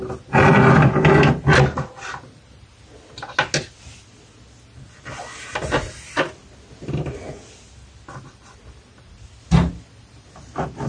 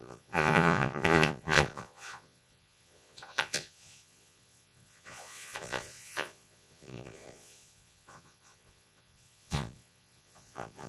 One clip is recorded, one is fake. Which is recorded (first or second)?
first